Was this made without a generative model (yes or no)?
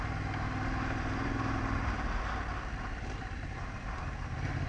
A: yes